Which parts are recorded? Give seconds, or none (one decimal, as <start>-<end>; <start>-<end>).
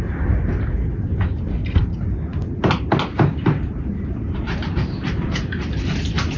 0.0-6.4